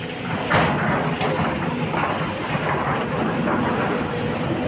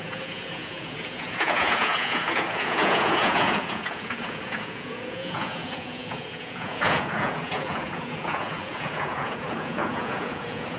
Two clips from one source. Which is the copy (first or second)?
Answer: second